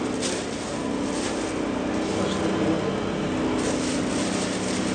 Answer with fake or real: real